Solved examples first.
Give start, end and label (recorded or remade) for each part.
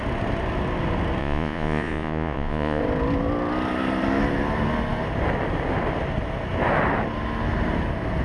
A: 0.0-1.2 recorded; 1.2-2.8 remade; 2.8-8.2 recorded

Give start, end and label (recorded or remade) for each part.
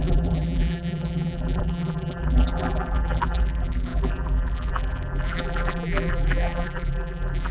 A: 0.0-7.5 remade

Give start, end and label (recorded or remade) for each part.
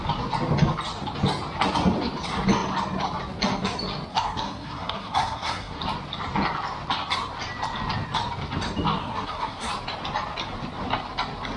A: 0.0-4.1 recorded; 4.1-5.8 remade; 5.8-9.0 recorded; 9.0-9.7 remade; 9.7-11.6 recorded